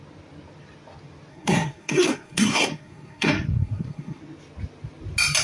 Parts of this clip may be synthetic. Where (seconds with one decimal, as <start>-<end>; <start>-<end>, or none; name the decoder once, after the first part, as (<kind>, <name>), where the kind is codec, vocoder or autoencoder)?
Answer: 1.3-4.2 (codec, SNAC)